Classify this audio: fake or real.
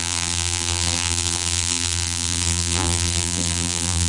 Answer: fake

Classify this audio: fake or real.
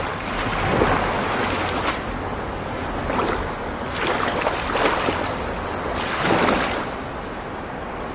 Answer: real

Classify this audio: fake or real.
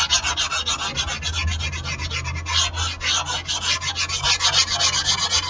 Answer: real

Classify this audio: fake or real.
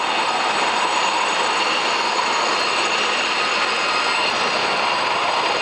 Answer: real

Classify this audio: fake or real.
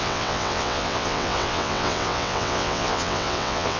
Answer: fake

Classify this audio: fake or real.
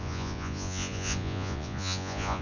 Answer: fake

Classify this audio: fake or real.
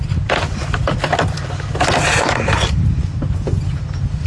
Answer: real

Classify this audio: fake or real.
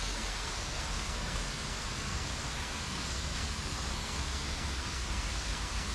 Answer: fake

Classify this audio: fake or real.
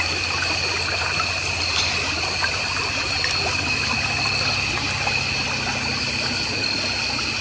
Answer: real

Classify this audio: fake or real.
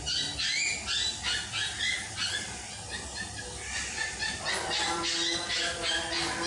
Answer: real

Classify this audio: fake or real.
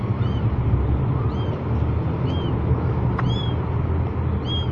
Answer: real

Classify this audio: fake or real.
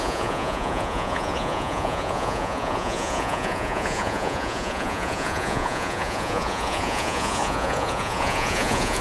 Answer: fake